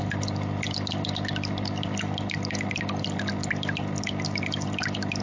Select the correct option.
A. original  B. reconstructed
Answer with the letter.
A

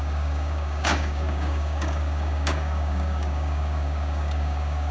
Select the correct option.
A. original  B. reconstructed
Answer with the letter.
B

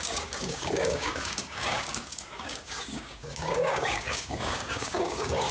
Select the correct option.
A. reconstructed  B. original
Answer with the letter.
A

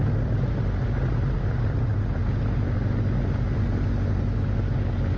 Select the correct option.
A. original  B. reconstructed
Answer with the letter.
A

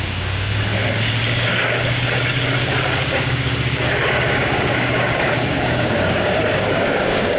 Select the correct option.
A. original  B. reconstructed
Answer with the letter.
B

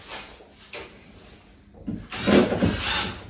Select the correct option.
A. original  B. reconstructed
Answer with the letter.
A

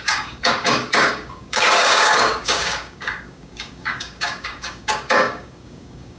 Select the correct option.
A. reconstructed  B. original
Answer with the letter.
A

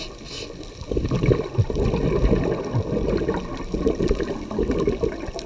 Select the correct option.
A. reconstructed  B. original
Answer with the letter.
B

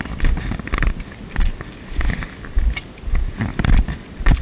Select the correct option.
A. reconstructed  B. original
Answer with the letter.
B